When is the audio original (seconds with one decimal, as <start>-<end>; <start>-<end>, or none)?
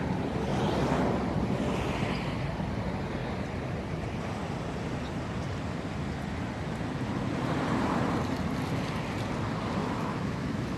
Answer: 0.0-9.8